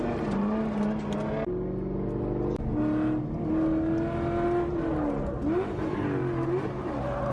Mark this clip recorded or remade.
recorded